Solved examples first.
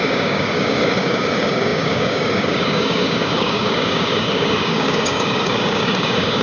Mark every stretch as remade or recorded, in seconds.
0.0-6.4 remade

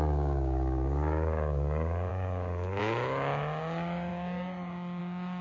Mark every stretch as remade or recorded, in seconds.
0.0-5.4 remade

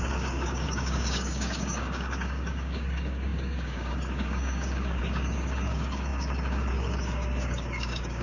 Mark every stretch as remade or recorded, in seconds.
0.0-8.2 remade